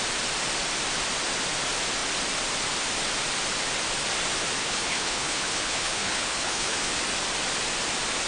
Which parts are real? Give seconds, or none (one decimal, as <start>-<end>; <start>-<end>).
0.0-4.6; 7.0-8.3